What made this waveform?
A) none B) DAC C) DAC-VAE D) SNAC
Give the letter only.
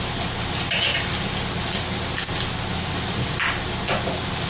A